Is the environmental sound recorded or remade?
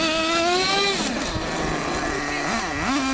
recorded